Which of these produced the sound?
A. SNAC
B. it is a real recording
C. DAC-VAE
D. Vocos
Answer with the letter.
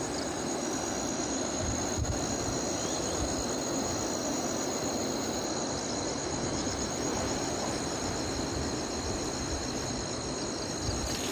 B